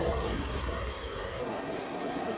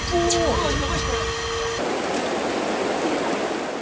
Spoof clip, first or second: first